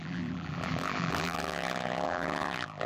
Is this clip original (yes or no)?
no